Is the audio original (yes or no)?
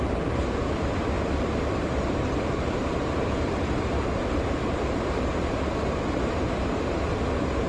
no